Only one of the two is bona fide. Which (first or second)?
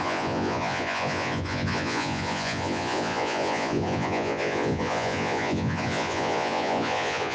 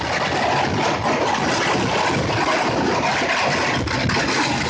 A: second